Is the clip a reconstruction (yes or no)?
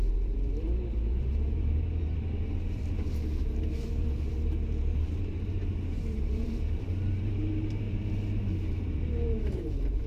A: yes